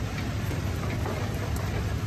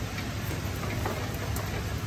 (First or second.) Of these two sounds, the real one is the second